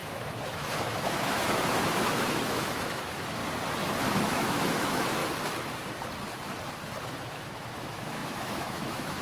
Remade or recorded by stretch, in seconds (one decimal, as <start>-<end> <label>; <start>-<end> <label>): 0.0-3.4 remade; 3.4-4.2 recorded; 4.2-5.2 remade; 5.2-7.3 recorded; 7.3-9.2 remade